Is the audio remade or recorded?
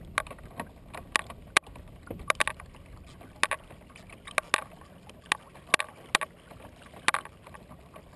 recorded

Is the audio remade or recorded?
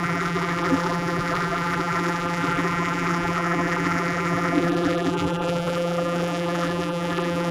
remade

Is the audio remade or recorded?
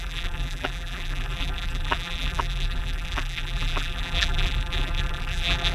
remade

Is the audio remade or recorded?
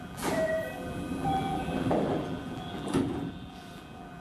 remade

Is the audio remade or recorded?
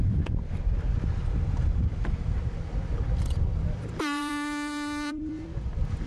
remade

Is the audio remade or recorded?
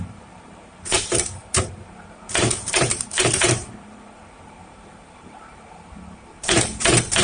remade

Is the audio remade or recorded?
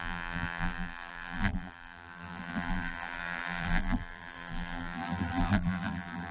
remade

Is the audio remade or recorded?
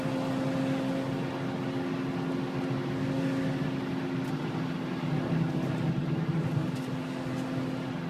recorded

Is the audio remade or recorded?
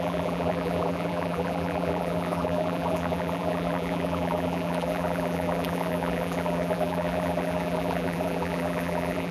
remade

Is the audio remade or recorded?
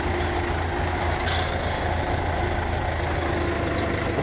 recorded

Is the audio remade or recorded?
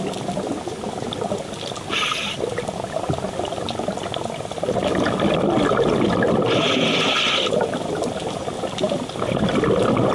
recorded